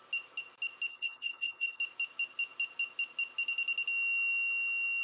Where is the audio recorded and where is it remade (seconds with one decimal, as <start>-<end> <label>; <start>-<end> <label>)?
0.0-0.9 recorded; 0.9-1.8 remade; 1.8-5.0 recorded